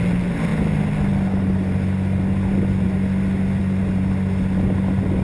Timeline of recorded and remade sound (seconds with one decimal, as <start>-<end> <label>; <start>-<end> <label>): 0.0-5.2 recorded